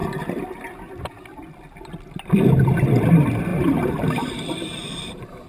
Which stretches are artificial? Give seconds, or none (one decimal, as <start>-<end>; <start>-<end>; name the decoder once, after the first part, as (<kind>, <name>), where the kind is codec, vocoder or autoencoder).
3.5-5.5 (vocoder, BigVGAN v2)